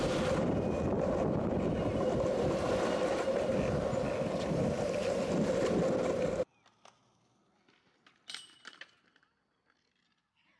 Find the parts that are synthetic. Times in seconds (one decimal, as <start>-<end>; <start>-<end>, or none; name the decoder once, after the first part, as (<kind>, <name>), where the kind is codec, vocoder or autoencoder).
none